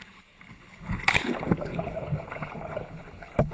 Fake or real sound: fake